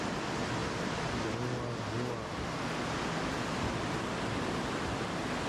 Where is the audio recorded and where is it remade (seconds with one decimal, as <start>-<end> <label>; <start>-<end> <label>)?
0.0-5.5 recorded